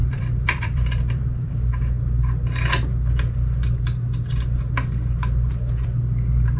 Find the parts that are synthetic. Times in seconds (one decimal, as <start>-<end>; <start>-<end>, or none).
0.0-1.5